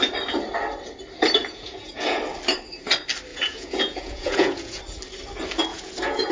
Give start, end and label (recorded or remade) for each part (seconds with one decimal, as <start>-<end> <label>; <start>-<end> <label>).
0.0-1.4 recorded; 1.4-2.2 remade; 2.2-3.3 recorded; 3.3-4.8 remade; 4.8-5.7 recorded; 5.7-6.3 remade